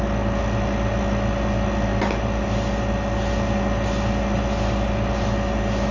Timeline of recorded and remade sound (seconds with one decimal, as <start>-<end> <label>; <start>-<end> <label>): 0.0-5.9 recorded